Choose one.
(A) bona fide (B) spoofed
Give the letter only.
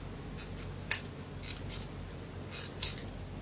A